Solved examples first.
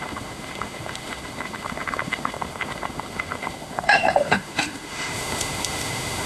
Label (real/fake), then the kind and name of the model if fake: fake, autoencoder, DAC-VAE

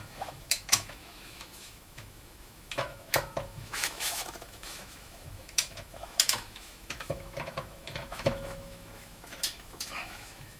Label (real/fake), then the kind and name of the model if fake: fake, autoencoder, DAC-VAE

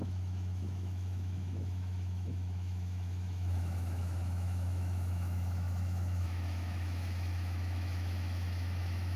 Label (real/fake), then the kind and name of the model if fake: fake, autoencoder, DAC-VAE